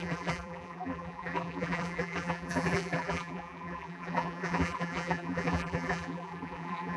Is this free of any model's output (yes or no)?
no